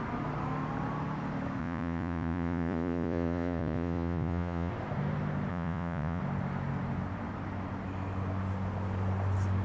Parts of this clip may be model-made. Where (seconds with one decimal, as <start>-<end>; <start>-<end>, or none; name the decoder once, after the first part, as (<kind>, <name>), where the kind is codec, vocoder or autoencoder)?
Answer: 1.6-4.7 (vocoder, Vocos); 5.5-6.2